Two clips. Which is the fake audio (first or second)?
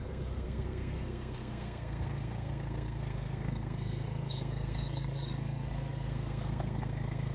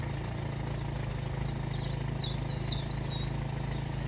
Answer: first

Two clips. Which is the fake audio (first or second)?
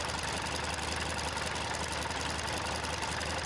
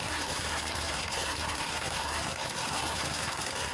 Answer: second